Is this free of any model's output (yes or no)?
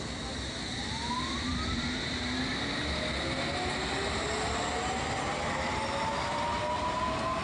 yes